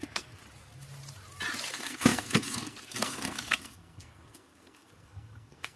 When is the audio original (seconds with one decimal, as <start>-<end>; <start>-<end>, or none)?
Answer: 0.4-1.7